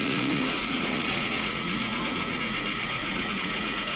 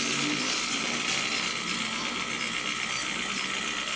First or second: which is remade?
first